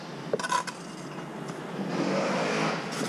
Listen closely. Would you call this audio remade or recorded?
recorded